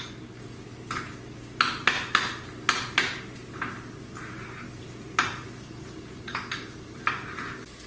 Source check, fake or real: real